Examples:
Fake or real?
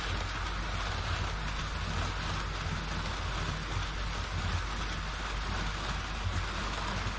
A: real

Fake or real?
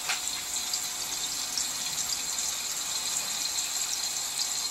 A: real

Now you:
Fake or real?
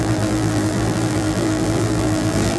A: fake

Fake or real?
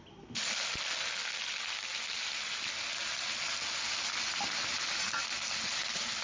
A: real